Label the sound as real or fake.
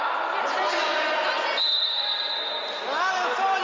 real